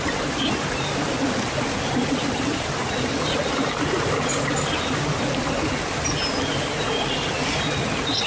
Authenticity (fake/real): real